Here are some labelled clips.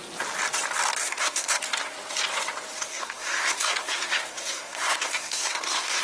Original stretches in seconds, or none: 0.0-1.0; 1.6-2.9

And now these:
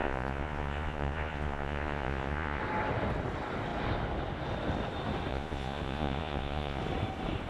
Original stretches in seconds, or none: 2.6-5.3; 6.8-7.5

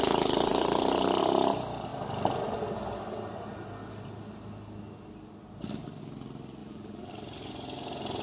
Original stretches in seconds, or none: 0.0-6.6; 7.1-8.2

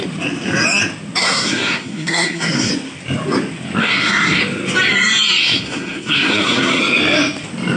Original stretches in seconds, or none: 0.0-1.2; 2.7-3.8; 4.4-5.4; 6.8-7.8

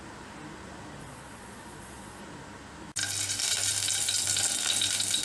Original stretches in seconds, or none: 0.0-1.0; 2.2-5.2